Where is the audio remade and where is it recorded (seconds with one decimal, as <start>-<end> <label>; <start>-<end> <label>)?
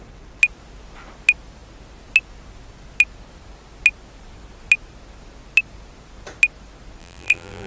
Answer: 0.0-7.0 recorded; 7.0-7.7 remade